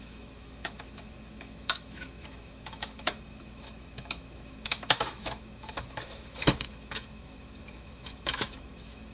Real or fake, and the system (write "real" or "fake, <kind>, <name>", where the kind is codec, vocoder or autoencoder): fake, autoencoder, DAC-VAE